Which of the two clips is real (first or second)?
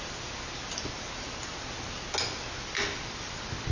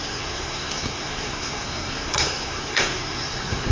first